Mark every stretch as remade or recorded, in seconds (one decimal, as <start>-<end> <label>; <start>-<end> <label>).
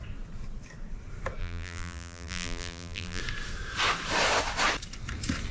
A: 0.0-1.4 recorded; 1.4-3.2 remade; 3.2-5.5 recorded